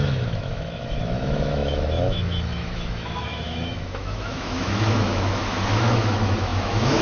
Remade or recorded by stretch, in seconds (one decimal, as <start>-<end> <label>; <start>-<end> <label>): 0.0-7.0 remade